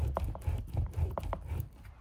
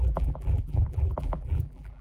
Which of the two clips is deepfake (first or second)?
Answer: second